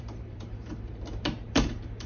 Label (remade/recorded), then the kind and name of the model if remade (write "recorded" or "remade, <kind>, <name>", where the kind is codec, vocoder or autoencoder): remade, vocoder, BigVGAN v2